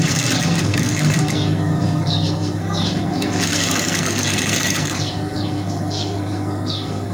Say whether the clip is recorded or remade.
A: remade